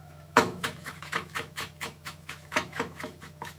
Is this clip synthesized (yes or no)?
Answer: yes